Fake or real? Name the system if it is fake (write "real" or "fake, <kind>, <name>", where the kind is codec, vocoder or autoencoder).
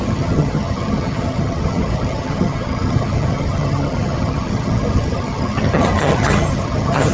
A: fake, vocoder, HiFi-GAN